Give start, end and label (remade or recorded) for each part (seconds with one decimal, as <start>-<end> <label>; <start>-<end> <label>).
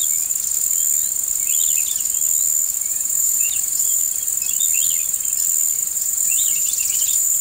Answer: 0.0-2.9 recorded; 2.9-4.0 remade; 4.0-5.8 recorded; 5.8-7.4 remade